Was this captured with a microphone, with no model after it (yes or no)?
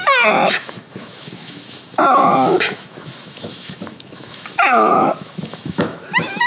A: no